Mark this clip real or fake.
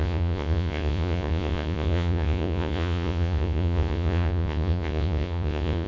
fake